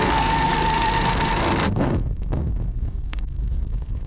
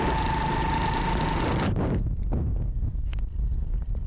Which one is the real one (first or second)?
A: second